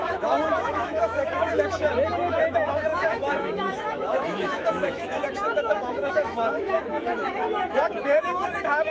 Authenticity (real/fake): fake